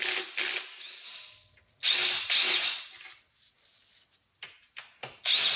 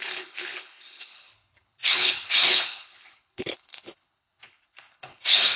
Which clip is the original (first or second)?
first